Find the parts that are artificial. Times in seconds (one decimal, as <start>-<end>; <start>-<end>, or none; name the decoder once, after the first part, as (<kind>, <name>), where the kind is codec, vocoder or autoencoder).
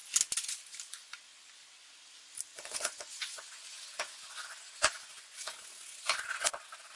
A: 2.5-6.6 (vocoder, Vocos)